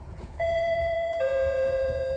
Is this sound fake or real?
fake